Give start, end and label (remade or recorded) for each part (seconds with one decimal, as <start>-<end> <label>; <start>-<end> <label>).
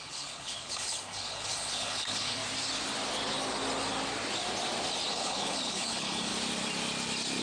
0.0-2.4 remade; 2.4-5.1 recorded; 5.1-6.3 remade; 6.3-7.4 recorded